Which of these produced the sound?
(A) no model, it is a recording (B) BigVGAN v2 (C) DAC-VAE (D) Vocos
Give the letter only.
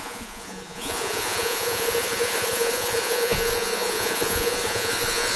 D